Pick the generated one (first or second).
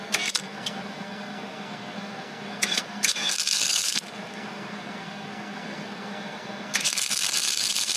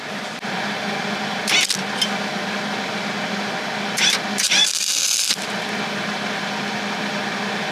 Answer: first